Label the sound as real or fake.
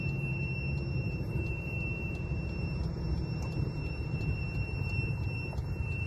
fake